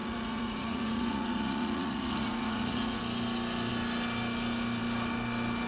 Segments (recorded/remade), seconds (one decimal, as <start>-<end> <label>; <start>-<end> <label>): 0.0-3.0 remade; 3.0-5.7 recorded